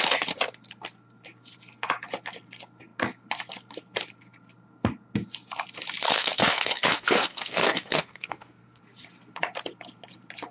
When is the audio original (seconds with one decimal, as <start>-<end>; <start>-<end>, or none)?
0.0-6.1; 8.8-10.5